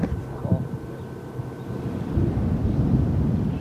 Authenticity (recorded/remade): recorded